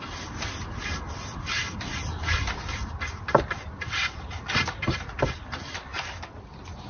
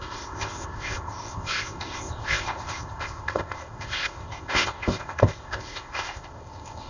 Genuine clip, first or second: first